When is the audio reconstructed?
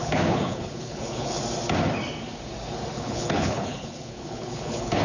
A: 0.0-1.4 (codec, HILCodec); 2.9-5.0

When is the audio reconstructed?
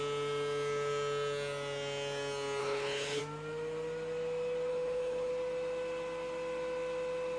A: 2.6-3.2 (codec, HILCodec); 4.7-5.3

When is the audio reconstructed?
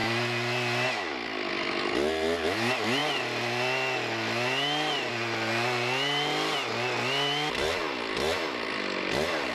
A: none